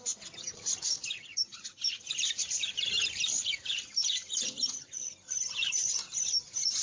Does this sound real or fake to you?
fake